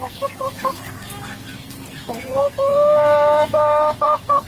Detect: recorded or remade remade